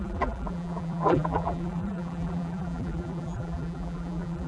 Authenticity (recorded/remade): remade